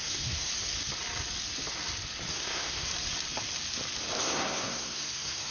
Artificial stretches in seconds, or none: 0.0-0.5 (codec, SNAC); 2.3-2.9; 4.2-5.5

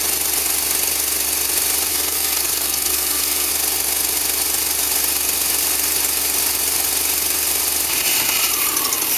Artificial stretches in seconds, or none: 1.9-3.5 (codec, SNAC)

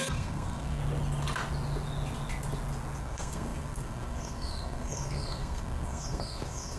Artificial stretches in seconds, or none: 0.0-0.8 (codec, SNAC); 3.0-6.8